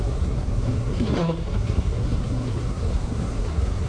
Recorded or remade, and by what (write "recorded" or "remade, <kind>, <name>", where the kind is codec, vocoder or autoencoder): remade, codec, SNAC